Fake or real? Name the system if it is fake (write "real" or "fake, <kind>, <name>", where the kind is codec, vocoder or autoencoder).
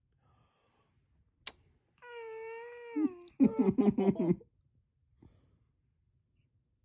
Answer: real